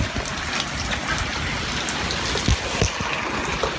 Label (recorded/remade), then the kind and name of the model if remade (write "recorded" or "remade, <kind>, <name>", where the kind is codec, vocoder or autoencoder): recorded